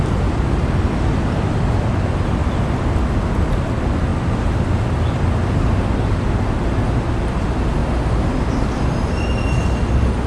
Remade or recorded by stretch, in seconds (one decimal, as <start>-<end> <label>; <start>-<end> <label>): 0.0-4.1 recorded; 4.1-4.8 remade; 4.8-7.8 recorded; 7.8-9.9 remade; 9.9-10.3 recorded